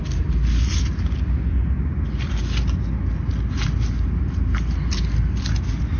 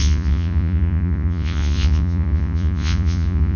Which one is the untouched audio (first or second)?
first